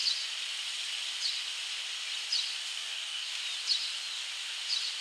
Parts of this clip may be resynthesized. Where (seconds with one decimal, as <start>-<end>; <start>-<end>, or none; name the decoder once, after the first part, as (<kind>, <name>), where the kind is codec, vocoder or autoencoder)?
2.8-3.3 (codec, DAC)